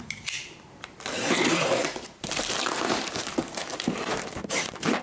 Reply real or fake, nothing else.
fake